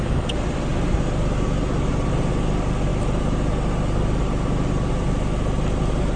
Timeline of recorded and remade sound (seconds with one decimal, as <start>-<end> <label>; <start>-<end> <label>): 0.0-6.2 recorded